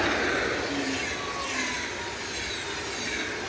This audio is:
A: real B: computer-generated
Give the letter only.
A